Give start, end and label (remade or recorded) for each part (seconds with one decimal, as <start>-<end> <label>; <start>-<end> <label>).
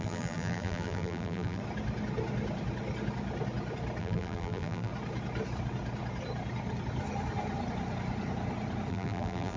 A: 0.0-1.6 remade; 1.6-4.0 recorded; 4.0-4.9 remade; 4.9-8.9 recorded; 8.9-9.6 remade